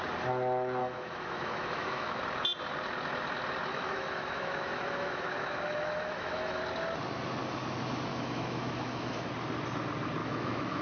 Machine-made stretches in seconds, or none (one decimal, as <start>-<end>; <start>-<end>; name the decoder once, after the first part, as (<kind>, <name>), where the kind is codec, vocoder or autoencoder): 0.8-2.2 (autoencoder, DAC-VAE); 3.7-6.6; 8.1-9.3; 10.2-10.8